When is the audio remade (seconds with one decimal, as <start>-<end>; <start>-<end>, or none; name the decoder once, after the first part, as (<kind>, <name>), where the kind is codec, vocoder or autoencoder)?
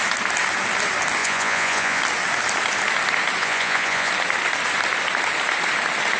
1.2-2.0 (vocoder, Vocos); 3.4-4.1